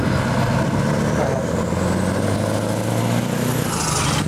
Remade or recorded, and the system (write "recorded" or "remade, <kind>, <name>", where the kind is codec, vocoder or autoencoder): recorded